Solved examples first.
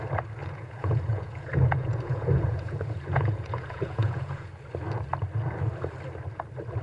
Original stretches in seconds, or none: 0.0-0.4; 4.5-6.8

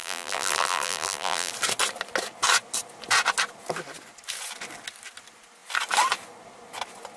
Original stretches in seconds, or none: 1.5-7.2

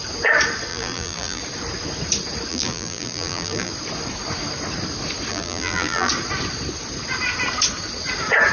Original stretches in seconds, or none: 0.0-0.7; 1.4-2.5; 3.7-5.3; 6.1-8.5

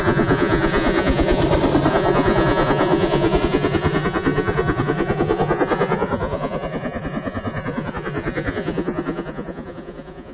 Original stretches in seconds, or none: 1.4-1.9

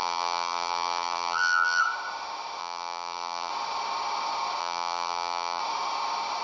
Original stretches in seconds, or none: 1.8-2.6; 3.5-4.6; 5.6-6.4

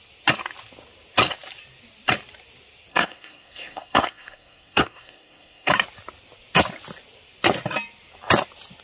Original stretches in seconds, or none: 0.0-2.9; 5.7-8.8

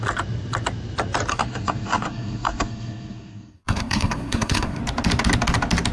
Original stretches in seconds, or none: 0.0-1.3; 4.8-5.9